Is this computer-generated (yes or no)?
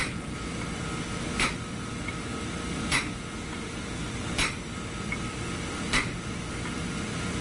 no